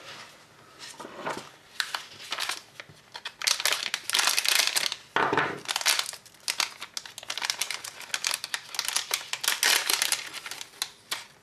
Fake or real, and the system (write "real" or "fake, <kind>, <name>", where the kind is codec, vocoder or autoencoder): real